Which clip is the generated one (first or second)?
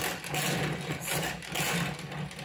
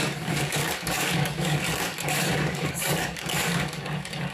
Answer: second